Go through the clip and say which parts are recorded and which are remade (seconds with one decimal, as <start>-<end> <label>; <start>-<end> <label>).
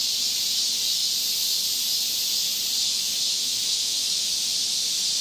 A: 0.0-2.9 recorded; 2.9-4.3 remade; 4.3-5.2 recorded